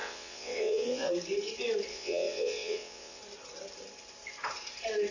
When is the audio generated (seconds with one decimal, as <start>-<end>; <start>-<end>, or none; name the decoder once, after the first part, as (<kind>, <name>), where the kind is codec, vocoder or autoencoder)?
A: 0.0-1.1 (vocoder, WaveNeXt); 1.9-3.2